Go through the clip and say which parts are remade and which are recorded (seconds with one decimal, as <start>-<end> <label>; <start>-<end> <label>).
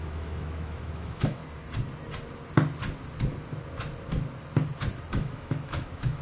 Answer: 0.0-1.4 remade; 1.4-5.1 recorded; 5.1-6.2 remade